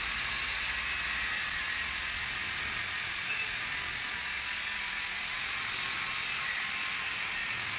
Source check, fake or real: real